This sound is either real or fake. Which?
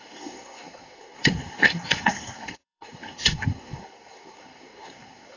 fake